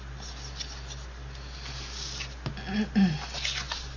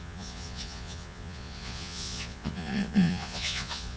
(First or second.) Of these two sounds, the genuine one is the first